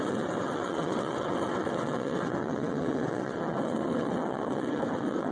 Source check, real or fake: fake